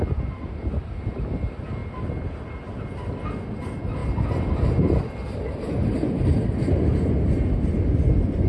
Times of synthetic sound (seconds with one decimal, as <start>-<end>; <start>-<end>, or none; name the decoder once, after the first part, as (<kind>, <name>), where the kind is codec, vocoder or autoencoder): none